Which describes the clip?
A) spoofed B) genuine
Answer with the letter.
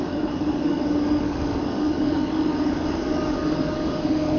A